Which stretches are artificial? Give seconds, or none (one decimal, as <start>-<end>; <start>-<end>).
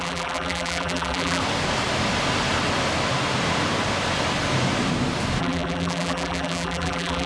0.0-1.4; 5.4-7.3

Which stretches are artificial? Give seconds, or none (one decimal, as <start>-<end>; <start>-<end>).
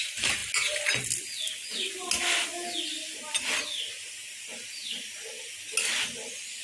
none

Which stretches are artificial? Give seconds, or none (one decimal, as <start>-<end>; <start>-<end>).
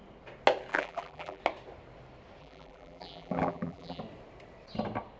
0.7-1.4; 2.4-4.0